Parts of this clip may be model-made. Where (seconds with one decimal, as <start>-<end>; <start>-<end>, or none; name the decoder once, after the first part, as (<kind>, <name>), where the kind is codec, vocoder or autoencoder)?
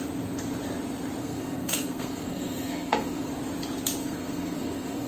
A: 1.2-3.3 (codec, SNAC); 4.0-5.1